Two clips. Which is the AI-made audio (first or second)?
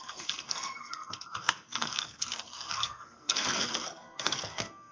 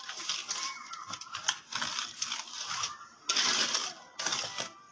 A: first